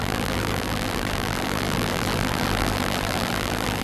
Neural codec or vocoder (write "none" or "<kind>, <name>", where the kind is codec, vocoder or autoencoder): vocoder, BigVGAN v2